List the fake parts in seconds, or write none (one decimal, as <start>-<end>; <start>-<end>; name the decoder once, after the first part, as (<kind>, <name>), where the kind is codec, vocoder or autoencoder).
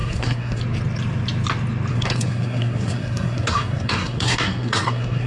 0.0-0.6 (codec, SNAC); 1.9-5.3